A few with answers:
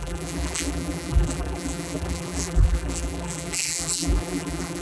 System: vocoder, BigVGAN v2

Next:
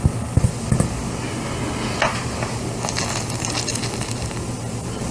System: none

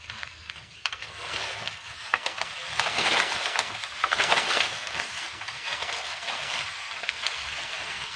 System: codec, SNAC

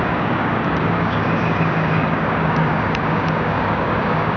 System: codec, DAC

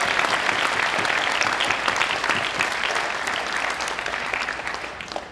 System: none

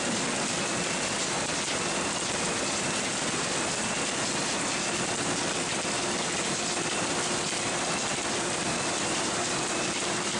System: none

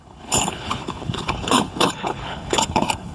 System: codec, HILCodec